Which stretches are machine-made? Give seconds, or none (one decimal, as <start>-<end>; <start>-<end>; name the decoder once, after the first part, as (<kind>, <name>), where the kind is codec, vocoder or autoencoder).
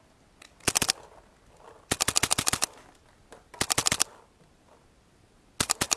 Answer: none